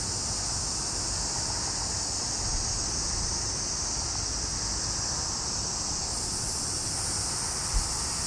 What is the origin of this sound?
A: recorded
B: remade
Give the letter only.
A